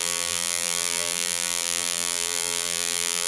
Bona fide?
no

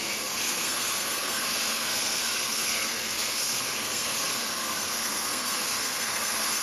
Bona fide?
no